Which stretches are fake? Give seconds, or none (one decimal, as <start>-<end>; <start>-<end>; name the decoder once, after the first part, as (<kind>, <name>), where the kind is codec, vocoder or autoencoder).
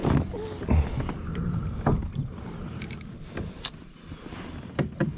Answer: none